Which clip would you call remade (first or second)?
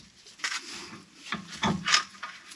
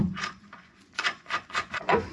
second